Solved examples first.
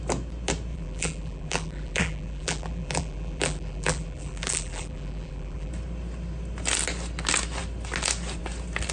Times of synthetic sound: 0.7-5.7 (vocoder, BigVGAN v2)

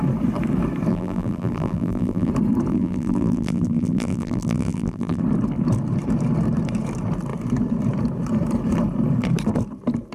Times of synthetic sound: 0.9-2.3 (vocoder, BigVGAN v2); 2.7-5.2

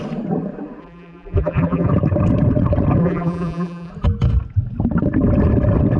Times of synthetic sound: 0.8-1.9 (vocoder, BigVGAN v2); 3.0-3.9